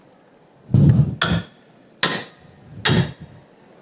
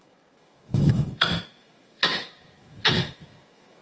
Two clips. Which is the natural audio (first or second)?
first